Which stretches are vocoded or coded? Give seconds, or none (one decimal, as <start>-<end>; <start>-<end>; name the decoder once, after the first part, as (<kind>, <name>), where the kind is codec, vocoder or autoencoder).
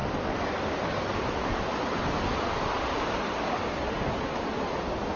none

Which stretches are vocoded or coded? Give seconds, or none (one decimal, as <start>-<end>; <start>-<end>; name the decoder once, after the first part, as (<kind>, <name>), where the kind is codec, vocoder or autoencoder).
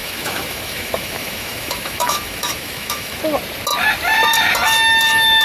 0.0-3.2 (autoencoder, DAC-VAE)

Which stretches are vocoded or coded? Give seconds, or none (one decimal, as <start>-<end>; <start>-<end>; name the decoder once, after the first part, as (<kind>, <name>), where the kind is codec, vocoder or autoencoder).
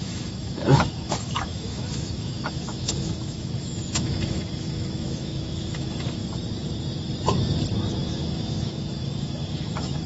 0.0-6.2 (autoencoder, DAC-VAE); 8.0-10.1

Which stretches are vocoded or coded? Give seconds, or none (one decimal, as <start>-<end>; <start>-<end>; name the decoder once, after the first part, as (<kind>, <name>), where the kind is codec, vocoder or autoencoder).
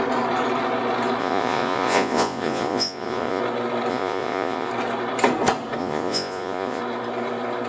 1.2-3.4 (vocoder, Vocos); 3.9-4.7; 5.8-6.8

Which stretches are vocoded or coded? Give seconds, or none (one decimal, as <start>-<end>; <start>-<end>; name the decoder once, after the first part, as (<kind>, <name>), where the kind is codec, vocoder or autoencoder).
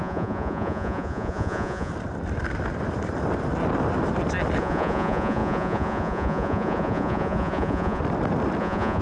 0.0-1.9 (vocoder, Vocos); 4.6-8.0; 8.6-9.0